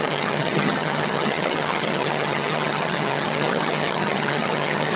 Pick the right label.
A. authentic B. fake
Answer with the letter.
B